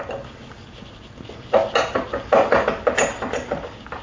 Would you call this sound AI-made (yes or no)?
no